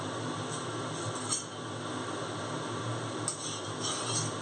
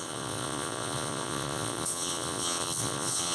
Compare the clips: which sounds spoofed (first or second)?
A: second